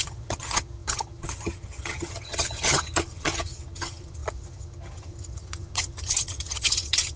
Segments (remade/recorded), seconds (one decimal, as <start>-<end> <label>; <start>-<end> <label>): 0.0-7.2 remade